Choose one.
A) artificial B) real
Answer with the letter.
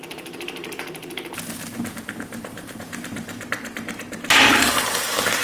A